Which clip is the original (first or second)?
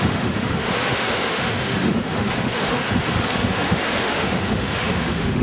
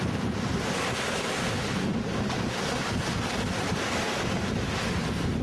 second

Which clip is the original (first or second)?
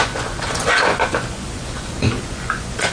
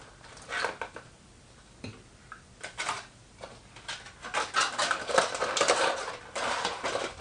second